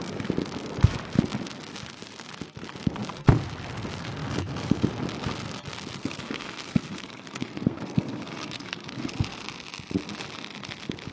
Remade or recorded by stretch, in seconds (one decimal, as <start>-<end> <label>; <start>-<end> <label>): 0.0-6.0 recorded; 6.0-9.1 remade; 9.1-11.1 recorded